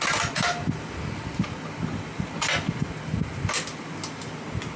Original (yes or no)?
yes